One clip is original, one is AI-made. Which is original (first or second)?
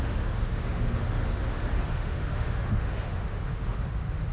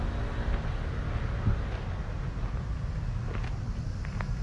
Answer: second